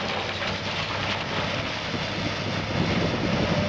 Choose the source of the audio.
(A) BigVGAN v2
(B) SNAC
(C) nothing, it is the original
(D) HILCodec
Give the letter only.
C